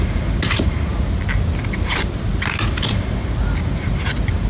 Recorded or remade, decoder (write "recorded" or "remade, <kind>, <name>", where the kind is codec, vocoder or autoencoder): recorded